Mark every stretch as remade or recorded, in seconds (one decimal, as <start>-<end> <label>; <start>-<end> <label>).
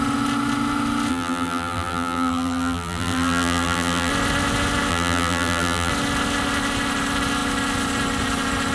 0.0-1.1 recorded; 1.1-4.1 remade; 4.1-4.9 recorded; 4.9-5.9 remade; 5.9-8.7 recorded